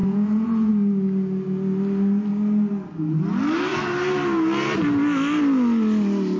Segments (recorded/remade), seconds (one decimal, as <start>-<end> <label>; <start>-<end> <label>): 0.0-0.7 remade; 0.7-6.4 recorded